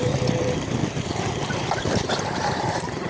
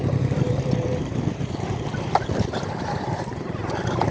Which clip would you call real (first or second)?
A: first